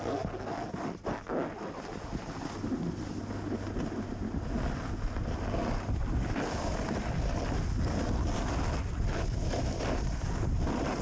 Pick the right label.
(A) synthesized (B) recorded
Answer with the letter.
B